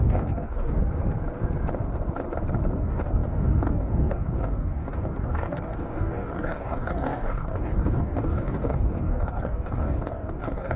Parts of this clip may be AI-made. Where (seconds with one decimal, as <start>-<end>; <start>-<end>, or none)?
0.0-0.8; 2.8-10.8